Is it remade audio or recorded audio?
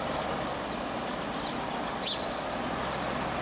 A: recorded